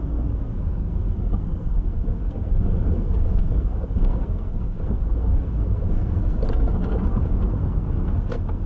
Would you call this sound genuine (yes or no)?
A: no